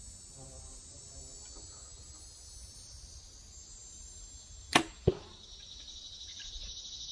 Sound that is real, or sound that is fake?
real